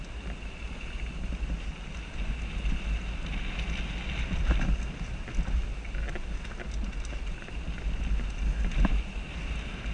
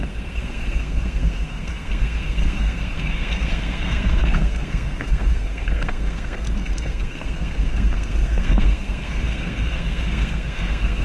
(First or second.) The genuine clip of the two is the first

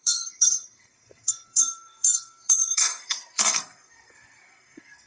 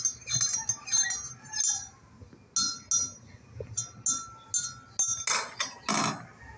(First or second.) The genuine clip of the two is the second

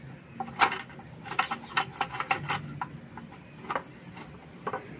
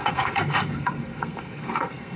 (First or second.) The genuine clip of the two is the first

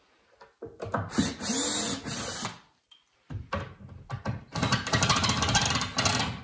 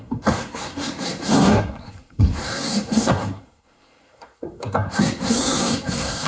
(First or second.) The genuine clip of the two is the first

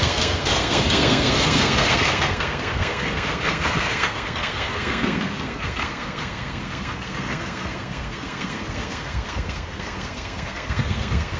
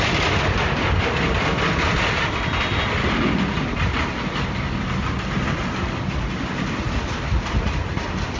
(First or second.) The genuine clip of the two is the second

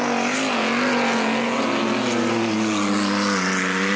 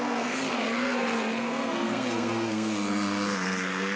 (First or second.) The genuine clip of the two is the first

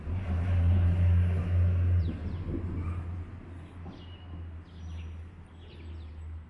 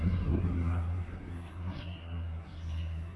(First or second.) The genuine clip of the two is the first